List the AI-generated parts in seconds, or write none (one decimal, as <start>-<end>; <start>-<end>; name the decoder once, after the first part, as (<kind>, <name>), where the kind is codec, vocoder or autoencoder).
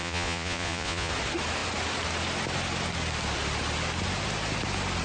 0.0-1.1 (vocoder, Vocos)